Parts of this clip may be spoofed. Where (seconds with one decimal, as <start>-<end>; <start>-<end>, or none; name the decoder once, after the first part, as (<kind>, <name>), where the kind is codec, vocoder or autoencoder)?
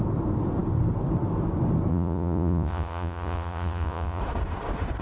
1.9-4.2 (vocoder, Vocos)